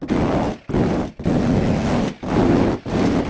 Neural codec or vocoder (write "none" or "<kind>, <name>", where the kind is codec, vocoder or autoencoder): none